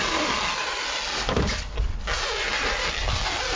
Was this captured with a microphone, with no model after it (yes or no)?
yes